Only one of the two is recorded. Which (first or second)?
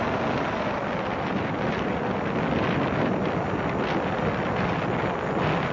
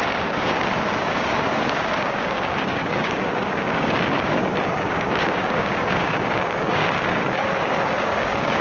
first